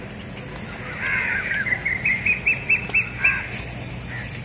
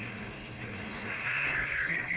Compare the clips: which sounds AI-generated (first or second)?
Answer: second